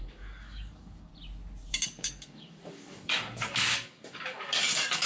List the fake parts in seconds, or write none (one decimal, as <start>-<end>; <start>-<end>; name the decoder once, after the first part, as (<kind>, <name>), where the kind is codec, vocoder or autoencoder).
0.0-1.1 (codec, DAC); 1.7-5.1